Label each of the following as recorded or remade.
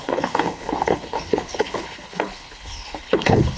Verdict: remade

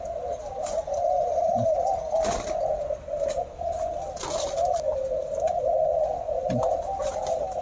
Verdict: recorded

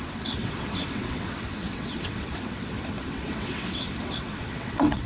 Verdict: remade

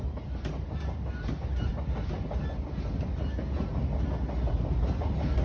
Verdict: recorded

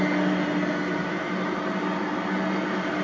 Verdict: recorded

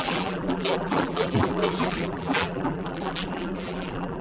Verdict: remade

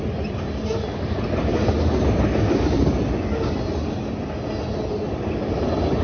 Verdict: recorded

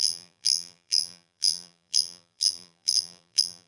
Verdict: remade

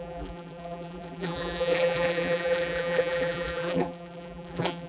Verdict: remade